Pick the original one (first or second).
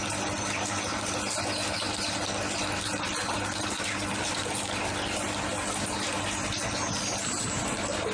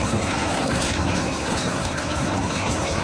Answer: first